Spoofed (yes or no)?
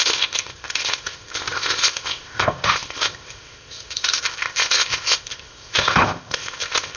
yes